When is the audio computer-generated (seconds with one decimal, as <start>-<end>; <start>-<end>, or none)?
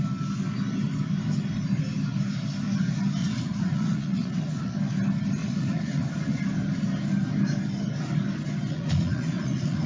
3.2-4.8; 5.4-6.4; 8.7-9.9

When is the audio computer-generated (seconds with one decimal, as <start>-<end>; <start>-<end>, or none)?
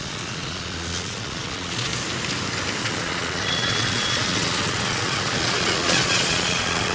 0.0-1.9; 2.8-6.9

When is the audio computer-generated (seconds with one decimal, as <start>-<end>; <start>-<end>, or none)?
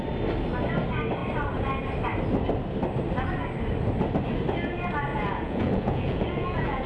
5.1-6.9